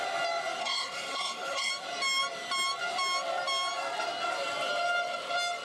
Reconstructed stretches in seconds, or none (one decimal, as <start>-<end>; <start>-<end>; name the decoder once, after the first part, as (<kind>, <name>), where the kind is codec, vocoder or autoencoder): 0.6-1.7 (codec, SNAC)